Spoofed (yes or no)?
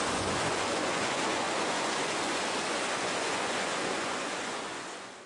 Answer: yes